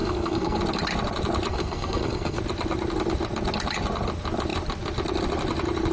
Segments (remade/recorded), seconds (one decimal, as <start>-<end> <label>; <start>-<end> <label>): 0.0-0.6 remade; 0.6-1.5 recorded; 1.5-2.4 remade; 2.4-5.9 recorded